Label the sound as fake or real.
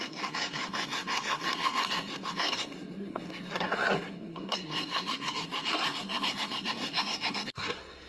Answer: fake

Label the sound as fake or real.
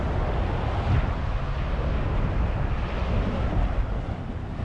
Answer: real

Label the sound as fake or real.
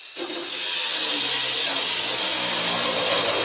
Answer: real